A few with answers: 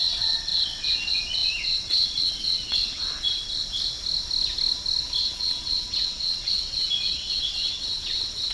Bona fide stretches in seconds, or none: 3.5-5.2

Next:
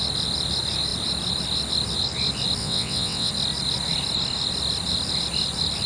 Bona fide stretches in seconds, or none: 0.0-2.6; 3.3-5.9

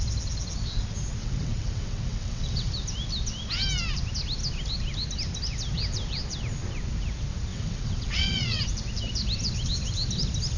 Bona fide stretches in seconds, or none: 0.0-1.2; 2.7-7.5; 8.6-10.6

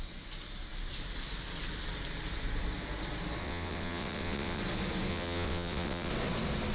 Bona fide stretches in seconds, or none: 0.0-3.4; 4.6-5.1; 6.1-6.7

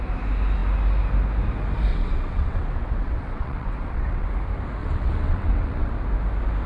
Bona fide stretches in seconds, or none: 0.0-1.9; 4.3-4.8; 5.9-6.7

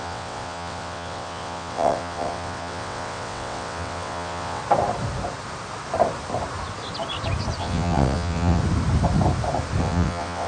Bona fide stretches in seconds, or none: 4.6-7.6; 8.6-9.8